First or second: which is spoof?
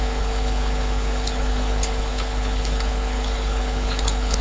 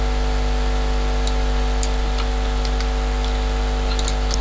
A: first